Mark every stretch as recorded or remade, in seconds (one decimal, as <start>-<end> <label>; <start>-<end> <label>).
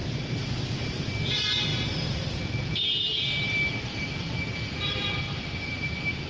0.0-1.1 remade; 1.1-1.7 recorded; 1.7-4.3 remade; 4.3-5.3 recorded; 5.3-6.3 remade